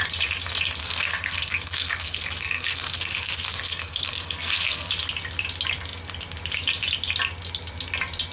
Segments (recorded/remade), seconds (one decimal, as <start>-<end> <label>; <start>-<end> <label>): 0.0-0.8 recorded; 0.8-4.9 remade; 4.9-8.3 recorded